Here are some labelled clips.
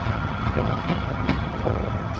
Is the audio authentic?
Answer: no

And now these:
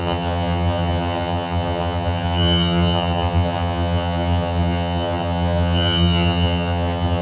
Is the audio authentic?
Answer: no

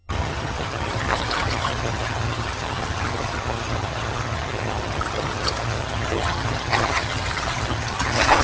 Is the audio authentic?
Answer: no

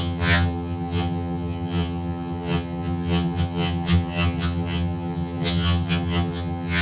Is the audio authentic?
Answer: no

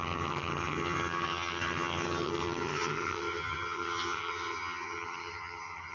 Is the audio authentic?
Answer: no